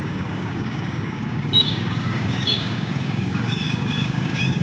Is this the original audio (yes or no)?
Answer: no